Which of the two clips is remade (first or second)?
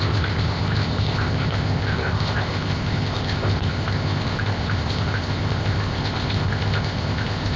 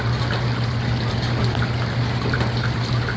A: first